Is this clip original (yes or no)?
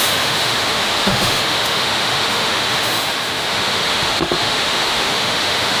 no